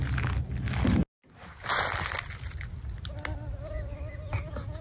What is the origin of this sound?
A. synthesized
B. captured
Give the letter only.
B